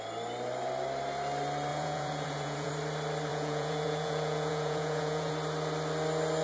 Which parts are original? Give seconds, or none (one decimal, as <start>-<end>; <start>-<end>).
0.0-1.7; 2.7-3.3; 5.3-6.4